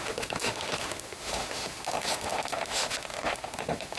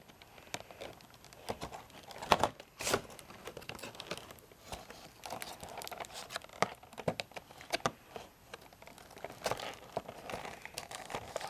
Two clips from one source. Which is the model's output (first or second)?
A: first